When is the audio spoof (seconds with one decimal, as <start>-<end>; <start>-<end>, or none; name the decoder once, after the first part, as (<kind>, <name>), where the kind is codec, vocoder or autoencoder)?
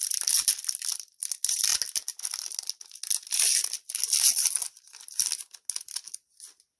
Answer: none